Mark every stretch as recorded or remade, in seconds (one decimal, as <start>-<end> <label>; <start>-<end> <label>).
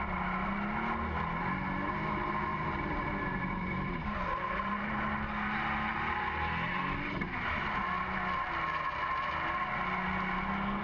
0.0-2.5 recorded; 2.5-5.0 remade; 5.0-10.8 recorded